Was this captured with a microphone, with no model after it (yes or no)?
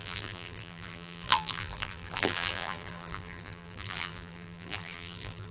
no